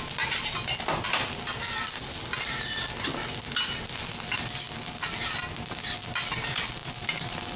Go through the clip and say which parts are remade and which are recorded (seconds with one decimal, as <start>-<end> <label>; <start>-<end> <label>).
0.0-7.6 recorded